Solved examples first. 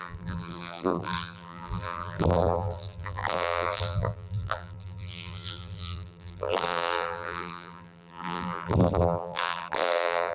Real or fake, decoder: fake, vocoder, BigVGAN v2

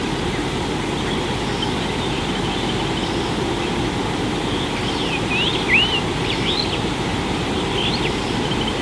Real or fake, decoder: fake, vocoder, BigVGAN v2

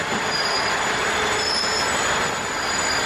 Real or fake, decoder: real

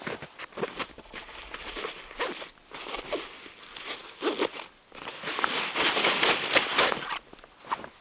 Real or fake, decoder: real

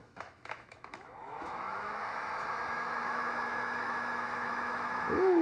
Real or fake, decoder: fake, autoencoder, DAC-VAE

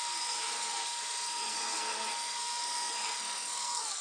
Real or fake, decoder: fake, codec, SNAC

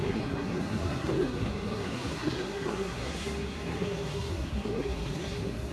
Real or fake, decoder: fake, codec, SNAC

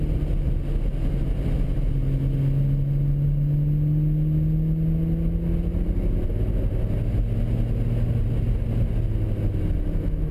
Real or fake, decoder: real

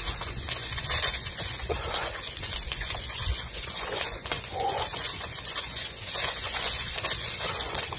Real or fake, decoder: fake, vocoder, Vocos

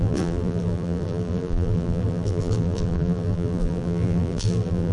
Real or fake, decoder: fake, vocoder, BigVGAN v2